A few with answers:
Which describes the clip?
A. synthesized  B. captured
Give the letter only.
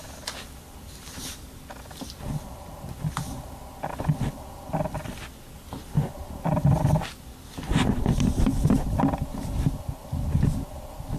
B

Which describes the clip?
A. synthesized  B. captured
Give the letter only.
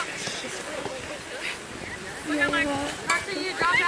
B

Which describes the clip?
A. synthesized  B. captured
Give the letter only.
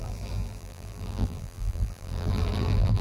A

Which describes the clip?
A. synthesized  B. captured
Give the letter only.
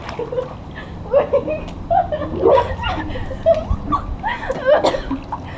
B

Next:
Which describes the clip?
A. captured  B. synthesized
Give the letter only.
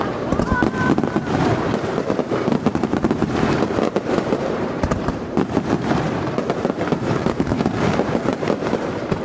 B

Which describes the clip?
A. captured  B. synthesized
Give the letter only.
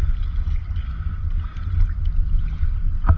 A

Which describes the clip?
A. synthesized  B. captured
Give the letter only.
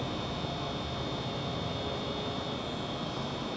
A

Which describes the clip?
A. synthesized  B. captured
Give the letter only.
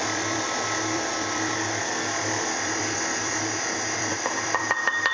A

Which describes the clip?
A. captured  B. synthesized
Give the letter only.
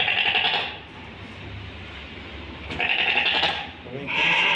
A